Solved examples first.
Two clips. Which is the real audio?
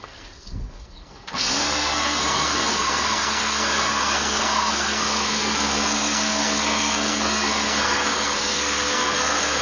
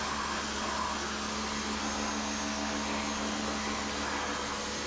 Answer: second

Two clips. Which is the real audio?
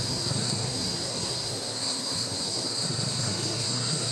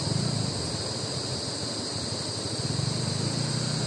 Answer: second